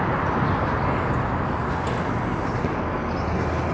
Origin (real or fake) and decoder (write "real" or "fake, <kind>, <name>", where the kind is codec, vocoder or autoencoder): real